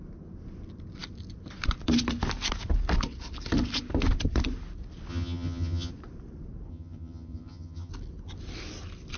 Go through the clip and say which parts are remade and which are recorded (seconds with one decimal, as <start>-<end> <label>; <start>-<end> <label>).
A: 0.0-5.1 recorded; 5.1-5.9 remade; 5.9-6.7 recorded; 6.7-7.9 remade; 7.9-9.2 recorded